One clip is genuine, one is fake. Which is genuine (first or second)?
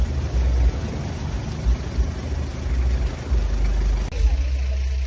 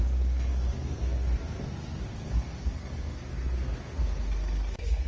first